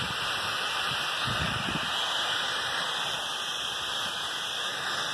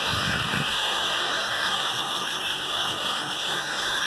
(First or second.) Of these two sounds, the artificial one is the second